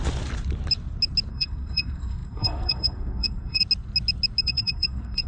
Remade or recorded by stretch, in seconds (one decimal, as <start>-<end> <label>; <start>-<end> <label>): 0.0-1.3 recorded; 1.3-3.6 remade; 3.6-4.4 recorded; 4.4-5.3 remade